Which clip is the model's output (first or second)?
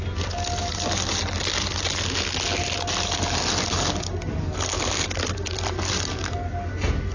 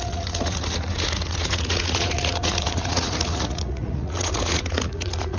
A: second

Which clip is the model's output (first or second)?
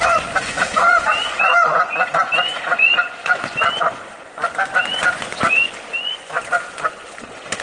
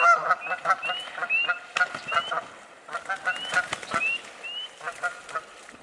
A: first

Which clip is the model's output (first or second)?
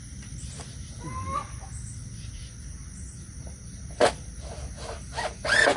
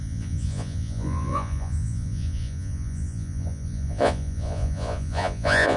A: second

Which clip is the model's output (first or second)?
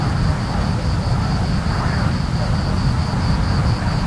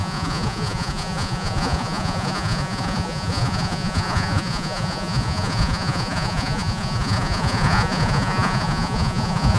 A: second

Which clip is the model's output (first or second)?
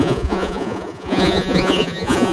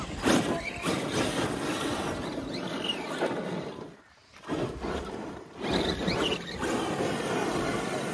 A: first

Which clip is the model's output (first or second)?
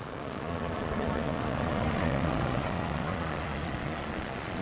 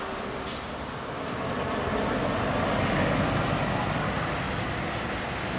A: first